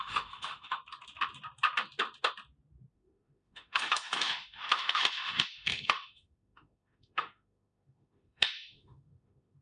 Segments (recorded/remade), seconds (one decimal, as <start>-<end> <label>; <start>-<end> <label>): 0.0-0.8 remade; 0.8-2.9 recorded; 2.9-9.6 remade